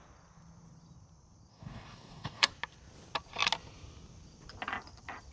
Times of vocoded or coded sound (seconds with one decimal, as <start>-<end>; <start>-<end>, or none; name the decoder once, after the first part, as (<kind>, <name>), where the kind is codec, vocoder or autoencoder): 1.5-2.5 (codec, DAC)